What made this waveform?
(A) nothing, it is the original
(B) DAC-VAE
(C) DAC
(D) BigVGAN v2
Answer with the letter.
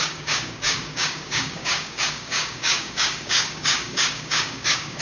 C